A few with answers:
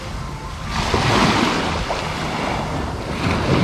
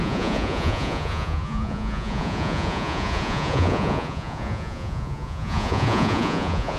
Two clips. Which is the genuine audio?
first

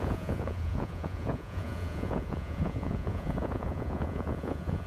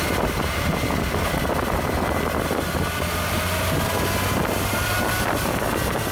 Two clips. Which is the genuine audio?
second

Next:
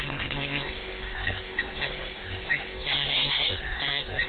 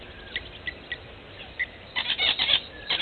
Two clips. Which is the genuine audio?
second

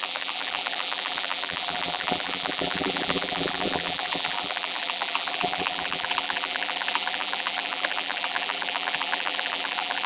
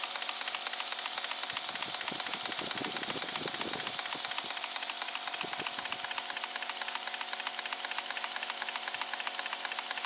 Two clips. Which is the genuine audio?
second